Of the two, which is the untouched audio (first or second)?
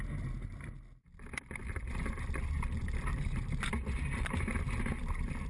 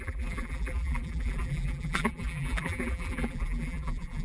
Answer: first